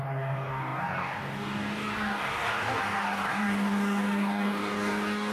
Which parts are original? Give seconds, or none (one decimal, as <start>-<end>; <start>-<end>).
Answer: none